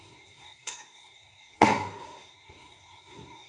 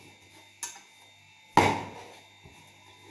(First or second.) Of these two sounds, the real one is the second